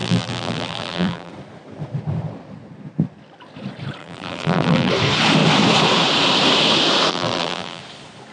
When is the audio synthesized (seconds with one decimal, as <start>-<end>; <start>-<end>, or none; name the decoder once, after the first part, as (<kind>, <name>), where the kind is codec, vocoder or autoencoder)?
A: 0.0-1.3 (vocoder, BigVGAN v2); 4.0-4.9; 7.1-7.8